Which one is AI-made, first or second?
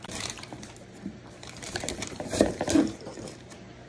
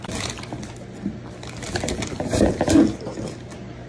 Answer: first